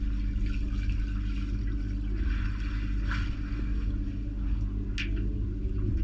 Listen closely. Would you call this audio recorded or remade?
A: recorded